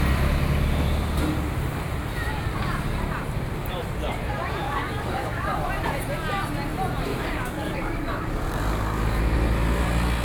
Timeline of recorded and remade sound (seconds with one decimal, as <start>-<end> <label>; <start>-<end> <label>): 0.0-4.6 recorded; 4.6-5.6 remade; 5.6-7.1 recorded; 7.1-9.2 remade; 9.2-10.2 recorded